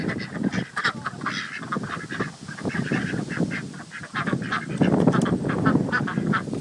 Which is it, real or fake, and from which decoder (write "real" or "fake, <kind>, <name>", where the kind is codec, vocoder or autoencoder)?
real